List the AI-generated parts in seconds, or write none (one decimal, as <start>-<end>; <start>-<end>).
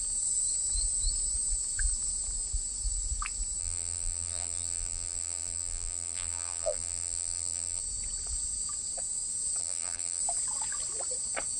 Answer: 3.6-7.8; 9.6-10.2